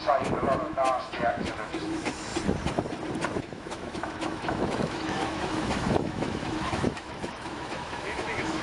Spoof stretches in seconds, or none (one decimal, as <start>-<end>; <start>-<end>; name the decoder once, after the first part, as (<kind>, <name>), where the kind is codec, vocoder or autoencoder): 0.0-2.3 (autoencoder, DAC-VAE); 3.4-8.6